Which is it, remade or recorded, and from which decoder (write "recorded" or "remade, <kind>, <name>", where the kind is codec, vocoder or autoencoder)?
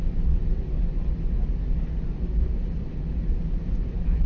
recorded